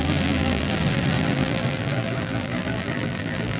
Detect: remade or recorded remade